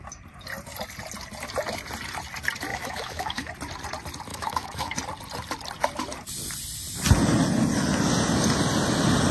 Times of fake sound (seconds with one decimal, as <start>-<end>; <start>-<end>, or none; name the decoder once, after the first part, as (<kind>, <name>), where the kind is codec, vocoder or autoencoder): 2.7-3.5 (autoencoder, DAC-VAE); 4.3-4.9